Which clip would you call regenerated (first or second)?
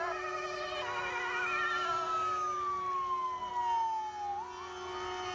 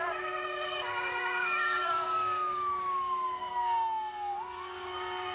second